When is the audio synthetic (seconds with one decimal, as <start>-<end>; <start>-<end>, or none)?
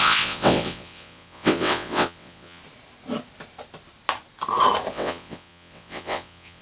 0.0-2.6; 4.9-6.6